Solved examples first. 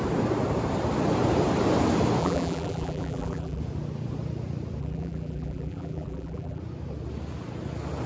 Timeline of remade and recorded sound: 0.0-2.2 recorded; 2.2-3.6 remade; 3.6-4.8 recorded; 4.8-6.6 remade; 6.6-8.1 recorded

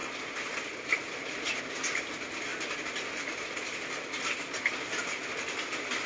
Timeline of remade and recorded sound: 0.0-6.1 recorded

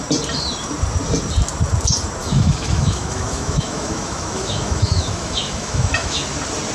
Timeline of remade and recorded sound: 0.0-2.2 recorded; 2.2-6.2 remade; 6.2-6.7 recorded